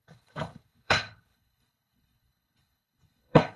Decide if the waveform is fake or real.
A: fake